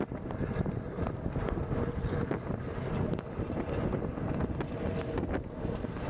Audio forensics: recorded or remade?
recorded